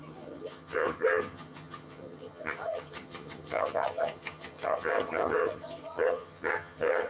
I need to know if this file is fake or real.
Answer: fake